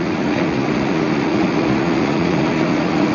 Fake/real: fake